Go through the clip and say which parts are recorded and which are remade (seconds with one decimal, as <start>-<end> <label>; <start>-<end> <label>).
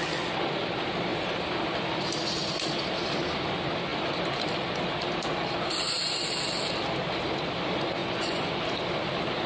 0.0-8.0 recorded; 8.0-8.6 remade; 8.6-9.5 recorded